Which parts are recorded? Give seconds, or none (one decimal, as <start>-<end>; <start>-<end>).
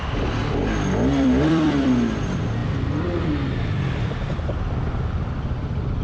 0.4-1.2